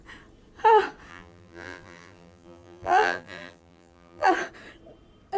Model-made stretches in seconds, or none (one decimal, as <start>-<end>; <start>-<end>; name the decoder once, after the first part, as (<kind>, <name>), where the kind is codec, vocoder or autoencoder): 1.1-4.3 (vocoder, BigVGAN v2)